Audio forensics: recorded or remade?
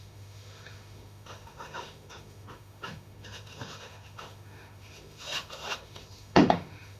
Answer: remade